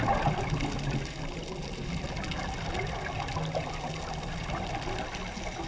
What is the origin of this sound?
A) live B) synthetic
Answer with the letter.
A